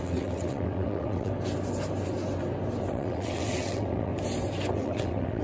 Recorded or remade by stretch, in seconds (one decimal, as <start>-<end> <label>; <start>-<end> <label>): 0.0-1.3 remade; 1.3-2.9 recorded; 2.9-4.1 remade; 4.1-4.7 recorded; 4.7-5.4 remade